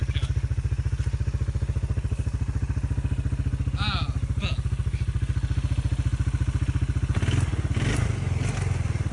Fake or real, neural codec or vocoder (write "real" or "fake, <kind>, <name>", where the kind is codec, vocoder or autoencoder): real